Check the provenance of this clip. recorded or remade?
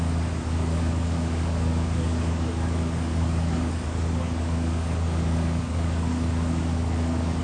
remade